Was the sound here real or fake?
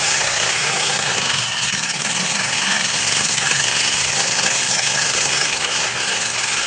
fake